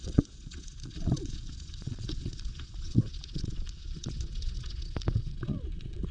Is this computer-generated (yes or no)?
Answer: yes